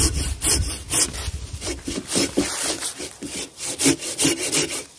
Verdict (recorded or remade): recorded